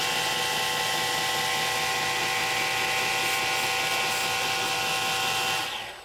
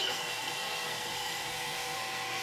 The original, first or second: first